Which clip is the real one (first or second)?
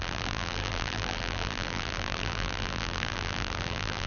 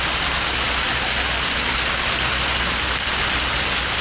second